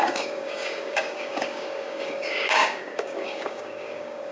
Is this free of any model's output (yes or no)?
no